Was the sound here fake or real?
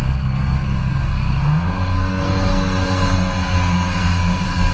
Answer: fake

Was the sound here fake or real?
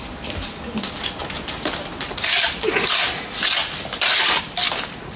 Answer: real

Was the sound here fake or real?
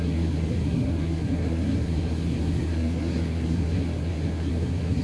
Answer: fake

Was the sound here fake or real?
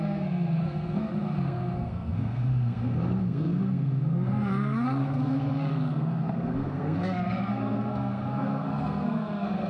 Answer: fake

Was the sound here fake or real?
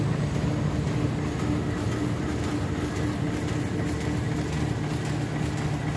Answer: real